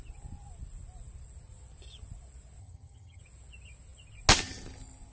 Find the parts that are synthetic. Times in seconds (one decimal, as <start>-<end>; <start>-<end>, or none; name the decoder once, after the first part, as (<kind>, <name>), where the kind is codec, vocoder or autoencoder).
2.6-3.2 (vocoder, HiFi-GAN)